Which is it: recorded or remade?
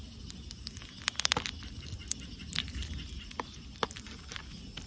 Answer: recorded